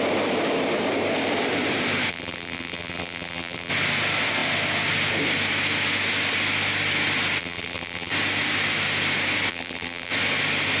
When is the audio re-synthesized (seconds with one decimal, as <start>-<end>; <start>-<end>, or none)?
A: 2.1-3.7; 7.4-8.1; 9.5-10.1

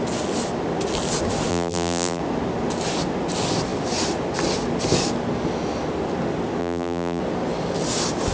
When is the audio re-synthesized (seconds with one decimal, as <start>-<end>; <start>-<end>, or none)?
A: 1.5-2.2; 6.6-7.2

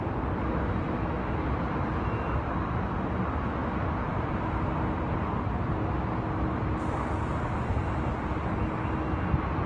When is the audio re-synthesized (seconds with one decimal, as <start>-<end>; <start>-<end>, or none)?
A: none